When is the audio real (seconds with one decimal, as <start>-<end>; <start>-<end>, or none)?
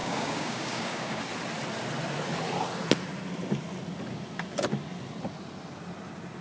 1.2-6.4